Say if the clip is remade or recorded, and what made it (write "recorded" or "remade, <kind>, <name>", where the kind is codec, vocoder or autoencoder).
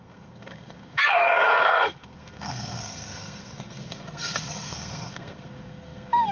remade, codec, SNAC